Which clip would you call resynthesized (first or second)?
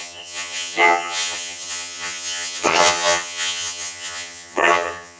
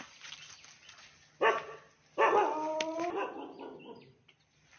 first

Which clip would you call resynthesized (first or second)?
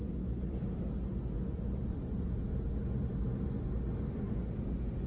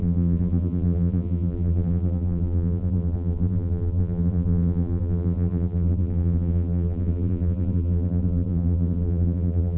second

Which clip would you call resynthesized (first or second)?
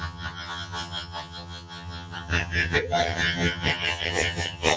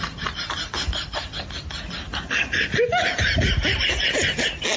first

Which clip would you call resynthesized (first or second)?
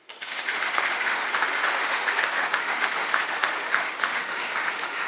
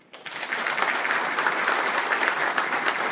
first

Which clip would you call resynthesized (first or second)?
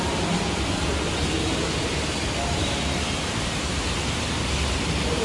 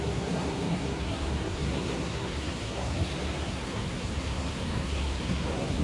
second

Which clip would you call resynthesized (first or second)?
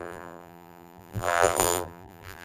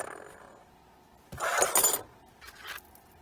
first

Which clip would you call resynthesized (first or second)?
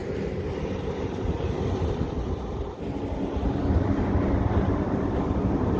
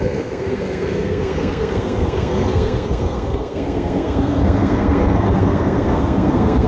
second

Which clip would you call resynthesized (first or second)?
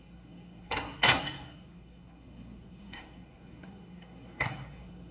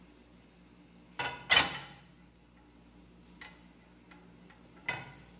first